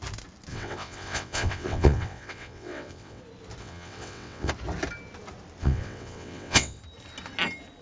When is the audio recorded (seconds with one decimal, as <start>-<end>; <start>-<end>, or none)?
0.0-0.5; 3.2-3.6; 4.5-5.6; 6.8-7.8